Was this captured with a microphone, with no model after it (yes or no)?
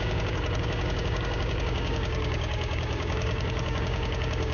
no